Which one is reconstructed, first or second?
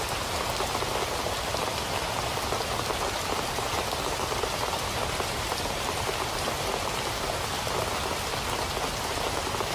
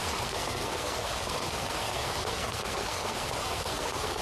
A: second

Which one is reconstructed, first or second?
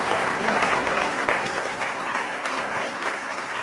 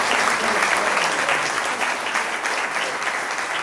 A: first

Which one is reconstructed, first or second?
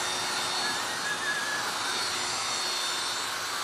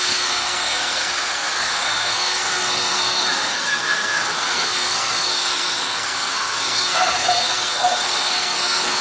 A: second